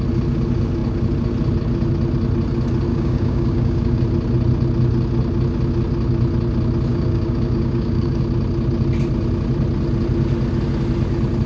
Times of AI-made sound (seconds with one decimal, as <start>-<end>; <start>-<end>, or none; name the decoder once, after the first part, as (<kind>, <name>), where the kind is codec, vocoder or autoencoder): 2.9-4.0 (codec, DAC); 6.9-8.2

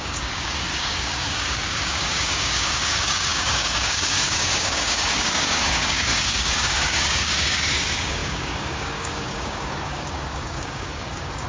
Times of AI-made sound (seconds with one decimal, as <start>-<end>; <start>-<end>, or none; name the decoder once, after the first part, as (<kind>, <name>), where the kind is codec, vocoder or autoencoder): 0.0-11.5 (codec, DAC)

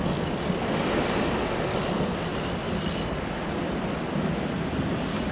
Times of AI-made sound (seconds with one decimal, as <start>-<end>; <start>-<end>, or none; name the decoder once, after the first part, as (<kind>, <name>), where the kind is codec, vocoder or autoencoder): none

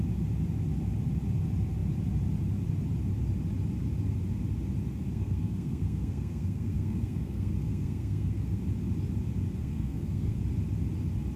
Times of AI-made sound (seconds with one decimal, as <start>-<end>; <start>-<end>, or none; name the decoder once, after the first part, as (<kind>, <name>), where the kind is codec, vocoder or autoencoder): 5.1-8.6 (codec, SNAC); 9.6-10.4

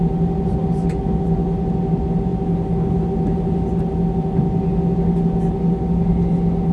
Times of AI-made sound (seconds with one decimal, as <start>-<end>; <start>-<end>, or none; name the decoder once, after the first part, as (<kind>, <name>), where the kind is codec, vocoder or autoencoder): none